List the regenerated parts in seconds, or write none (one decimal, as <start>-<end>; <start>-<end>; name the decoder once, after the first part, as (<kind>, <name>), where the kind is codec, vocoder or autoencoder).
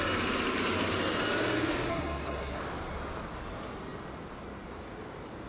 1.9-2.6 (codec, SNAC)